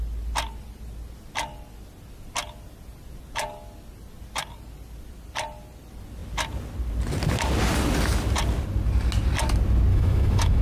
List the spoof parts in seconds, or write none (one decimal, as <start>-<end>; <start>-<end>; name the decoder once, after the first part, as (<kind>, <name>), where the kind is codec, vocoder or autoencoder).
9.9-10.6 (autoencoder, DAC-VAE)

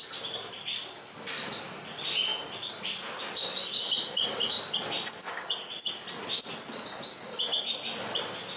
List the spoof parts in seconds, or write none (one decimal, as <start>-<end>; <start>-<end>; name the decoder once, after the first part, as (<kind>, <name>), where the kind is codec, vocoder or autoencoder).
none

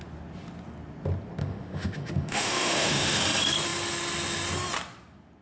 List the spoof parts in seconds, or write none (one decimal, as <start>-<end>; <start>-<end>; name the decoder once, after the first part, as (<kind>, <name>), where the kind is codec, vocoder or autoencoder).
1.4-3.2 (autoencoder, DAC-VAE)

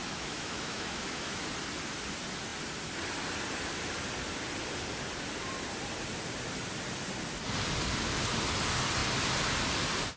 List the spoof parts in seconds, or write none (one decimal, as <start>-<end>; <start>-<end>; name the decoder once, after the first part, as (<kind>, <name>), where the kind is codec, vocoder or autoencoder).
0.0-1.4 (autoencoder, DAC-VAE)

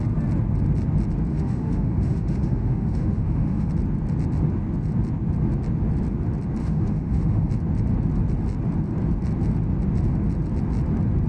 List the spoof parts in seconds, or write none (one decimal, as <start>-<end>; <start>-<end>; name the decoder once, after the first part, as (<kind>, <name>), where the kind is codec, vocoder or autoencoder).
1.3-3.7 (autoencoder, DAC-VAE); 6.6-7.5

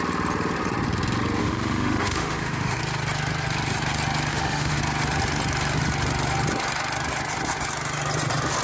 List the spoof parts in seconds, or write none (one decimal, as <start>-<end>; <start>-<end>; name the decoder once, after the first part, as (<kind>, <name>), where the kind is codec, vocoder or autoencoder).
1.4-2.8 (autoencoder, DAC-VAE); 4.3-4.8